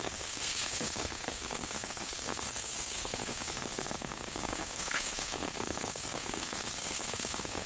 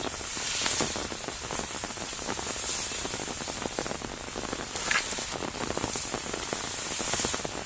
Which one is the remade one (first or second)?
first